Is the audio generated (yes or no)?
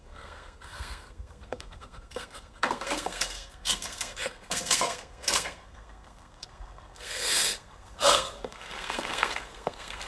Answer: yes